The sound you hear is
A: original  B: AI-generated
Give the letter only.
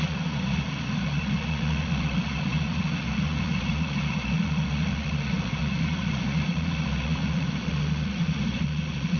B